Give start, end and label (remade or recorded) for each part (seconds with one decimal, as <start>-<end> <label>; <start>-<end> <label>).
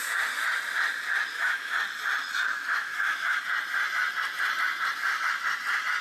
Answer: 0.0-1.3 recorded; 1.3-1.8 remade; 1.8-2.5 recorded; 2.5-3.4 remade; 3.4-6.0 recorded